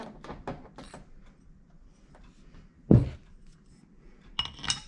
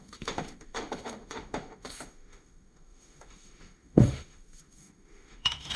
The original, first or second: first